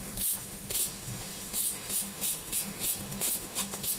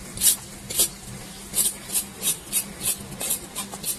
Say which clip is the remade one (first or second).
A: first